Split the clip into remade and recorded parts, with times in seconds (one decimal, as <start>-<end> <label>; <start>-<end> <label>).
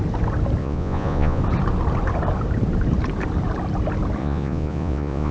0.0-0.6 recorded; 0.6-1.4 remade; 1.4-4.2 recorded; 4.2-5.3 remade